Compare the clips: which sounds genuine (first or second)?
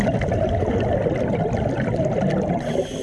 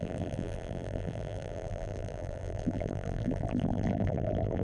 first